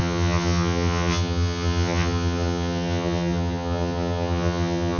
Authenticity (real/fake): fake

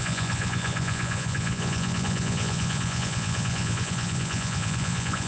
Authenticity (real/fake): fake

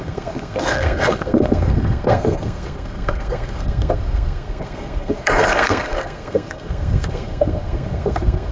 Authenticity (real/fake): fake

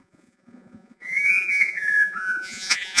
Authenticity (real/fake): fake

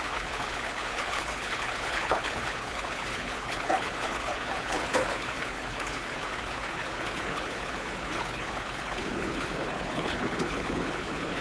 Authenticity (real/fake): fake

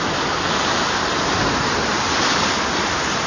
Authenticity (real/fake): real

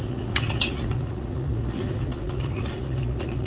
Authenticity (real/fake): fake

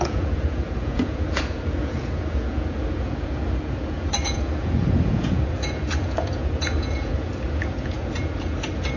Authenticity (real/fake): fake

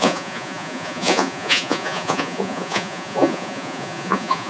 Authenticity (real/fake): fake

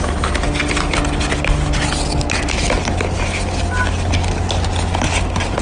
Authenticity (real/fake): real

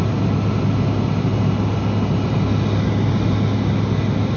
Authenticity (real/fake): real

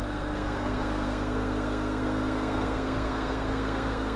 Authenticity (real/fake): fake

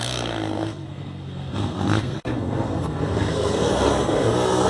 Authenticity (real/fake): fake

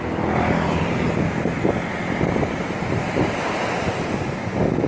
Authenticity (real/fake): real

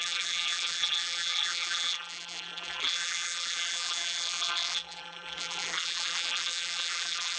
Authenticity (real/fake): fake